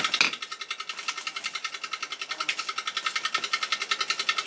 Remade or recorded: recorded